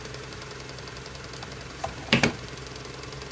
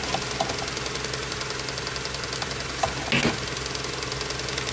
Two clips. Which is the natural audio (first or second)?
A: second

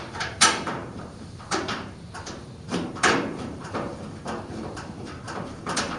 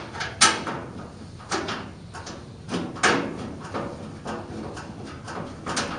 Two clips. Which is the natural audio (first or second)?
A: second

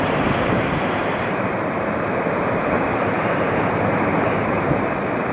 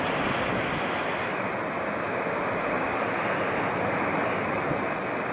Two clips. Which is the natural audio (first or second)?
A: second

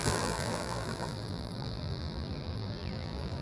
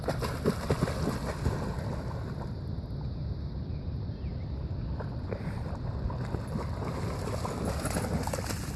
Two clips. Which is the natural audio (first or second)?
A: second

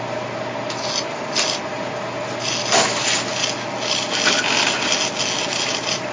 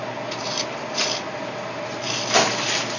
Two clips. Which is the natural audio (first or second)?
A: first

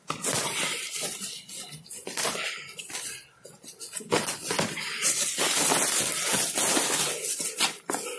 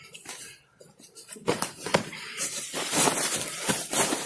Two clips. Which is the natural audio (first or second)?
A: first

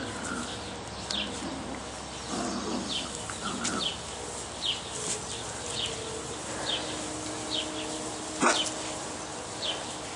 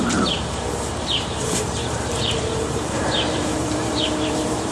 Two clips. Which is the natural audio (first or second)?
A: first